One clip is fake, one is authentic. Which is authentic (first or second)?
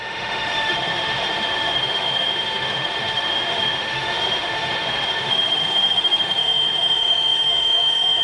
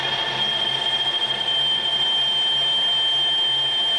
second